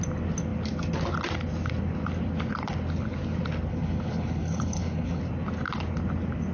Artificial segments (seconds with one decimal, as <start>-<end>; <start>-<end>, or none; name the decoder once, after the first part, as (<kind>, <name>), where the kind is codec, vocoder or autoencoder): 3.7-5.2 (codec, HILCodec)